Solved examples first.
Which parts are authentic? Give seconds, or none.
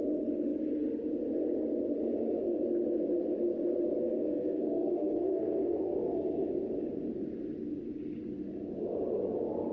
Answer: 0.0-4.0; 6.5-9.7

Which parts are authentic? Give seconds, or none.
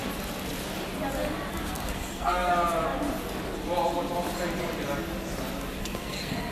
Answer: 0.0-1.5; 2.5-5.8